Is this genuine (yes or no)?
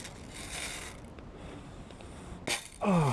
yes